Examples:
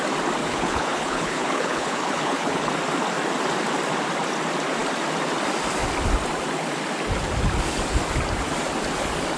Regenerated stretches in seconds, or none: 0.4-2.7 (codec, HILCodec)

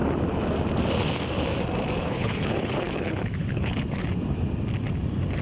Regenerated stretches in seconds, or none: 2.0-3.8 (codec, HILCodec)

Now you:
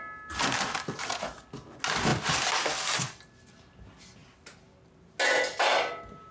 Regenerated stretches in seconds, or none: none

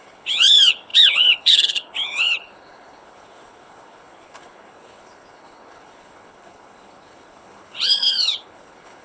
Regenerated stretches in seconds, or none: 0.0-9.0 (codec, HILCodec)

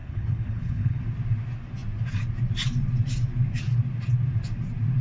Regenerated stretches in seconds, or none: 0.0-1.0 (codec, HILCodec)